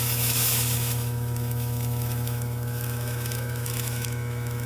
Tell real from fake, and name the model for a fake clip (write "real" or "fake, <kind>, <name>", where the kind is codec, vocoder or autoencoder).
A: fake, autoencoder, DAC-VAE